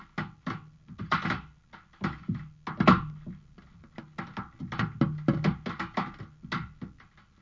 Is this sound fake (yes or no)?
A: no